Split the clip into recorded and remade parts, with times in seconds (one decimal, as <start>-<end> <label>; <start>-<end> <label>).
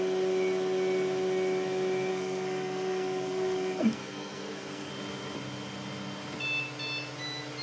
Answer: 0.0-2.1 recorded; 2.1-4.9 remade; 4.9-7.6 recorded